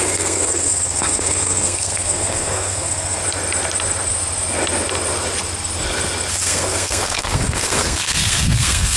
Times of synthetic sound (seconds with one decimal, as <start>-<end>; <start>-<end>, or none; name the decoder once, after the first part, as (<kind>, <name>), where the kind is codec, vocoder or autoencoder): 0.0-3.2 (codec, SNAC); 6.3-9.0